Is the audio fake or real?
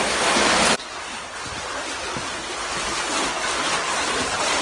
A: real